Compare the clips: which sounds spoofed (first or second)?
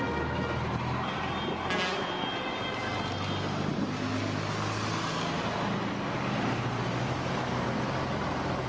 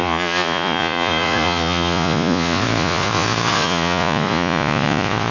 second